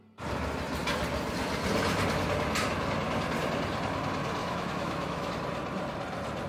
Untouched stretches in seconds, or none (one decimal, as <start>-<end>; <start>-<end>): 0.0-4.4; 5.3-6.5